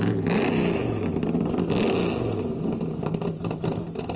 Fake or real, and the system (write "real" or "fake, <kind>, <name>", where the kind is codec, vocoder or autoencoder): real